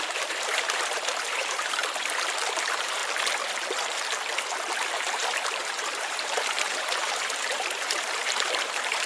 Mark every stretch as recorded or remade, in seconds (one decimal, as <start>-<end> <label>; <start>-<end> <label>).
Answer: 0.0-1.8 remade; 1.8-2.6 recorded; 2.6-3.0 remade; 3.0-5.0 recorded; 5.0-9.1 remade